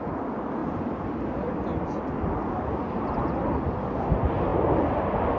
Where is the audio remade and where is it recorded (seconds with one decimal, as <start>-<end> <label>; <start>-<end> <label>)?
0.0-0.6 recorded; 0.6-2.8 remade; 2.8-4.5 recorded; 4.5-5.0 remade; 5.0-5.4 recorded